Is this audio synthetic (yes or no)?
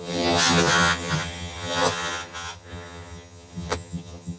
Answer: yes